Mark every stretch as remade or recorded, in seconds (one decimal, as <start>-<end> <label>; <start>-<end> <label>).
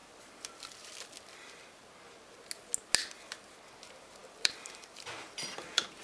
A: 0.0-0.9 remade; 0.9-4.2 recorded; 4.2-6.0 remade